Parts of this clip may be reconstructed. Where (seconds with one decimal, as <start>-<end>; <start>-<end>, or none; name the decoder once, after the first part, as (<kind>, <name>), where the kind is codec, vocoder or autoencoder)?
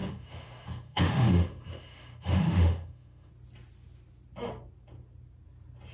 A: 0.0-3.3 (autoencoder, DAC-VAE)